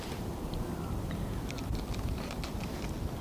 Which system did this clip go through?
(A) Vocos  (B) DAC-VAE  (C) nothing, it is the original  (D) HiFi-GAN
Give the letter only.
C